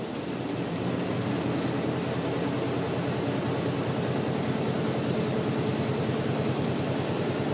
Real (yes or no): yes